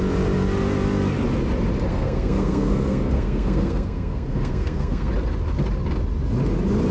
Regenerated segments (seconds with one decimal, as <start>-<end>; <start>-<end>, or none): 1.9-5.1